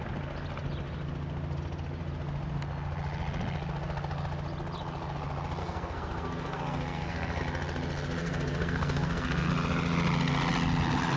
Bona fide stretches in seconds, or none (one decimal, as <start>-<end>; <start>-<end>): 0.0-5.6; 7.4-8.2; 9.5-11.2